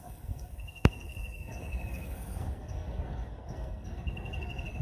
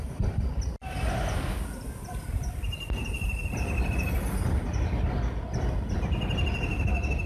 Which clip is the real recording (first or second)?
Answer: second